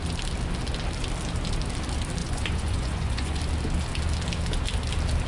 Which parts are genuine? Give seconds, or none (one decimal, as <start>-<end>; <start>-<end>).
0.0-2.2; 3.4-5.3